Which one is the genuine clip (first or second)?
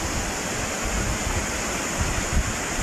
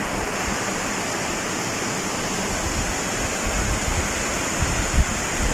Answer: first